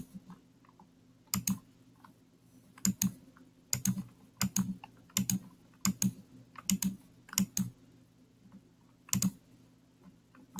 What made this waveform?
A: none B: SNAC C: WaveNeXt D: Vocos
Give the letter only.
A